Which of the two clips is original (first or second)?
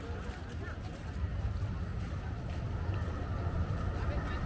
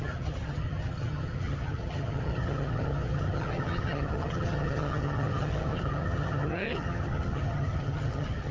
first